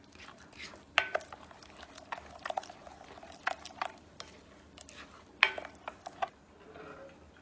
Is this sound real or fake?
real